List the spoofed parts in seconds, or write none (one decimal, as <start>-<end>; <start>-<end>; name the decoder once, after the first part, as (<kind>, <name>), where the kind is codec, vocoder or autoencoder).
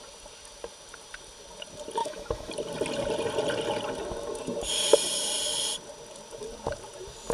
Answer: 2.0-2.5 (autoencoder, DAC-VAE)